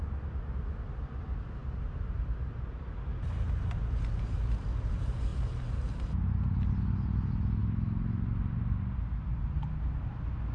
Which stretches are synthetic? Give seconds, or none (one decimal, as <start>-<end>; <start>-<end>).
1.6-2.8; 5.3-6.0